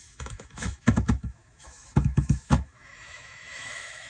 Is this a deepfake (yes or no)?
yes